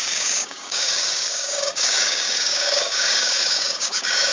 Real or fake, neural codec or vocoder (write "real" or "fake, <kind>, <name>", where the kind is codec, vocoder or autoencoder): fake, codec, DAC